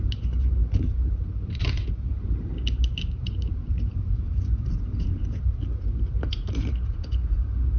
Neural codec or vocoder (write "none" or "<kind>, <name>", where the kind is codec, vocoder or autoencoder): vocoder, BigVGAN v2